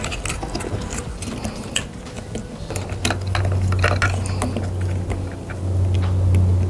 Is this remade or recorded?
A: recorded